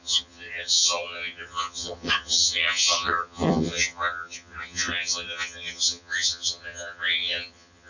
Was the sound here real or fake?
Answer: fake